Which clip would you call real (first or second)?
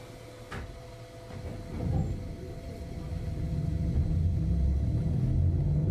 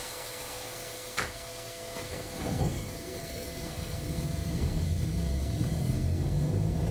first